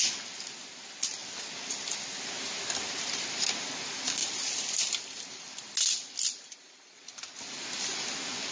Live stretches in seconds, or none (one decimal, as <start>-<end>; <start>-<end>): 0.0-8.5